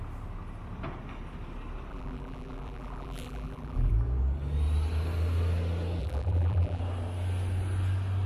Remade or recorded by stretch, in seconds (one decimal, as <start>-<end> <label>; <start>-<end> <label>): 0.0-1.9 recorded; 1.9-3.9 remade; 3.9-6.0 recorded; 6.0-6.8 remade; 6.8-8.3 recorded